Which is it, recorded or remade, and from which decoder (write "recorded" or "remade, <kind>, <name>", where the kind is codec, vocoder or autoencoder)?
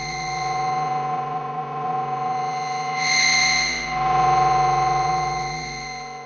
remade, vocoder, Vocos